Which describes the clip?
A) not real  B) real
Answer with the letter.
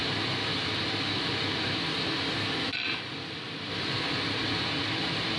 B